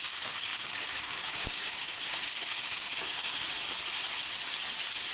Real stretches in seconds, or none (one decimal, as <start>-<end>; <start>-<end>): 3.4-5.1